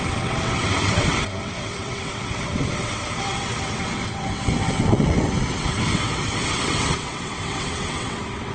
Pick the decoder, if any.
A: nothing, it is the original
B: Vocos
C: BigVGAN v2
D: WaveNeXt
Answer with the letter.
D